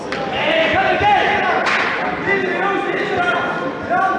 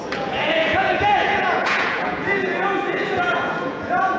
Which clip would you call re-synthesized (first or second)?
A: second